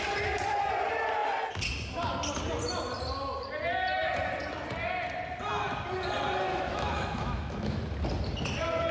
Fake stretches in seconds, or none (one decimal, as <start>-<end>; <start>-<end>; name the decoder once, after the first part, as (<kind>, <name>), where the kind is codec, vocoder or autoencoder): 6.5-7.8 (autoencoder, DAC-VAE)

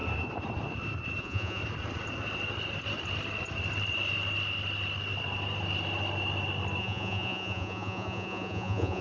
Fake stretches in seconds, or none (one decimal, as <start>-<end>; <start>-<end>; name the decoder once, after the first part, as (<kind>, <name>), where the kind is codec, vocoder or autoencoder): 1.2-1.6 (vocoder, Vocos); 6.8-9.0

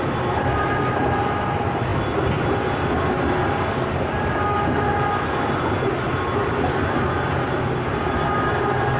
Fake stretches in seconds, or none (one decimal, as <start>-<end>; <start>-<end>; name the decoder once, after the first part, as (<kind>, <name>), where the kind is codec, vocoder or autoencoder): none

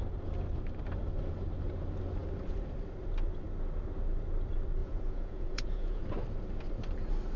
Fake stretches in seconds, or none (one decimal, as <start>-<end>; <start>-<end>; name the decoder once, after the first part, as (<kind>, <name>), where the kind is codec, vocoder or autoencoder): 4.8-6.0 (vocoder, Vocos)